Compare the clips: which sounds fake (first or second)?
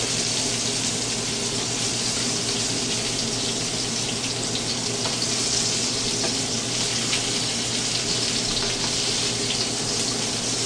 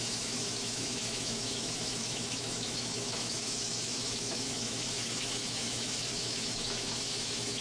second